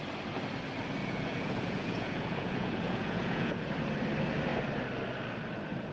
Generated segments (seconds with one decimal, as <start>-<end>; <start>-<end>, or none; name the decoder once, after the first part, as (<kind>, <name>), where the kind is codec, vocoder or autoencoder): 1.0-3.7 (vocoder, Vocos)